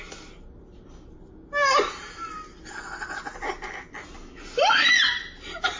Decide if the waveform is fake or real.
real